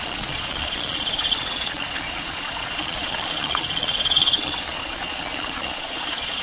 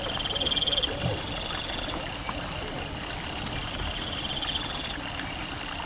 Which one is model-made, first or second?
first